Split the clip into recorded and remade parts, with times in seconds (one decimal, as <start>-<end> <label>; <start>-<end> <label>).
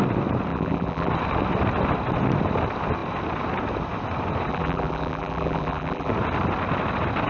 0.0-0.5 recorded; 0.5-1.1 remade; 1.1-4.5 recorded; 4.5-6.1 remade; 6.1-7.3 recorded